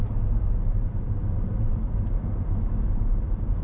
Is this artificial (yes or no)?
yes